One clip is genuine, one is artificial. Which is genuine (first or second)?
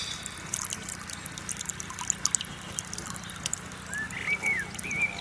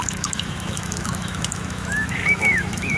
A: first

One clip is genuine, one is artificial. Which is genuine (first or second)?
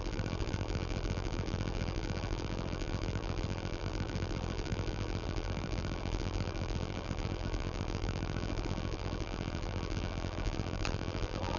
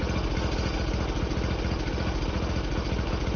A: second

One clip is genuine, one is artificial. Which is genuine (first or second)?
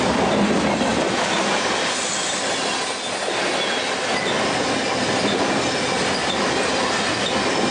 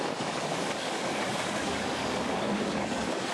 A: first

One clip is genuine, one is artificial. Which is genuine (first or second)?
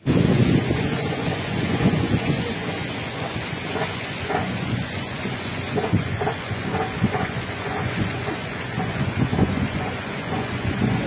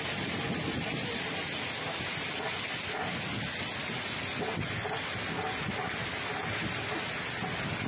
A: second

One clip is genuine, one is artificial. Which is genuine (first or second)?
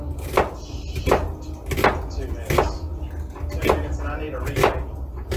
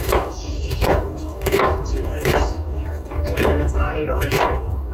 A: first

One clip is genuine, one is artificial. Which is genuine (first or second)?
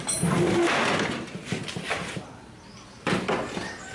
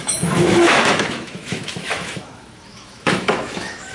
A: first